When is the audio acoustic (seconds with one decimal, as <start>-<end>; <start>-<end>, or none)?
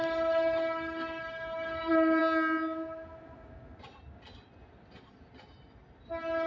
0.0-6.5